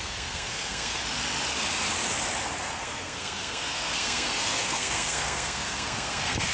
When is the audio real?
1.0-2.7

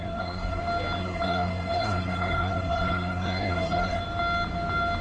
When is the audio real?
0.6-1.0; 4.0-5.0

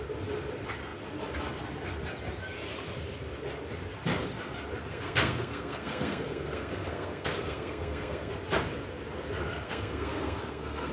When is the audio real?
0.0-4.8; 8.3-9.5